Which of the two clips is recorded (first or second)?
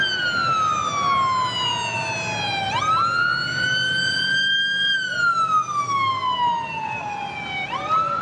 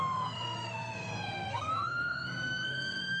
first